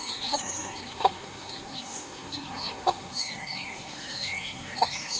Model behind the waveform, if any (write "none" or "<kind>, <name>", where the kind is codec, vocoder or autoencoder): codec, SNAC